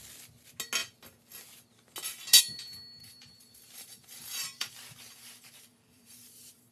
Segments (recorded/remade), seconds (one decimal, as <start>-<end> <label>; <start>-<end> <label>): 0.0-3.0 recorded; 3.0-6.7 remade